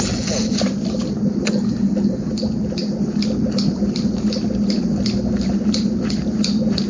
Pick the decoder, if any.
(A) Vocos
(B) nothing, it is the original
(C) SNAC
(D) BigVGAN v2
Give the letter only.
B